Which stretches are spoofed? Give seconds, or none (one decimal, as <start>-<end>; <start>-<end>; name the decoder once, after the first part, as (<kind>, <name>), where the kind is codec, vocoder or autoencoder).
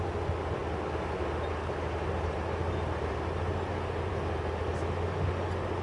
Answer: none